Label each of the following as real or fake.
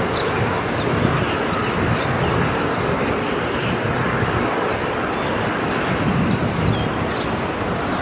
real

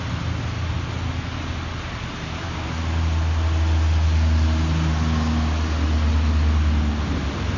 real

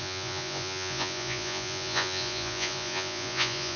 fake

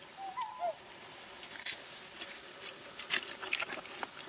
real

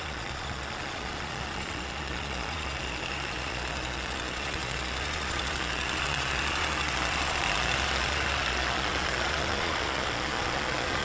fake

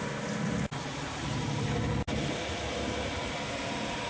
real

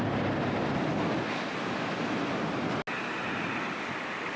real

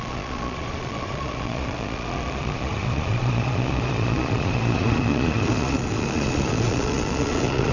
fake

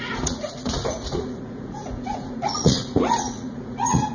fake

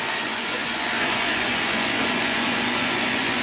fake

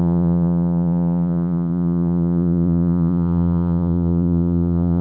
fake